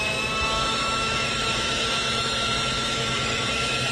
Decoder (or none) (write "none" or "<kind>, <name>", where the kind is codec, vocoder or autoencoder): autoencoder, DAC-VAE